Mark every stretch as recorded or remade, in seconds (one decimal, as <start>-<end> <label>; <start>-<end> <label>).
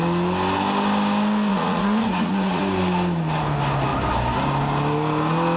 0.0-1.5 recorded; 1.5-2.6 remade; 2.6-5.6 recorded